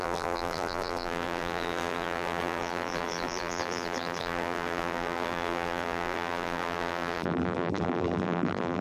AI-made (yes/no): yes